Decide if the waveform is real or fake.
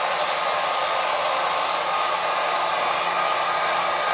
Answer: real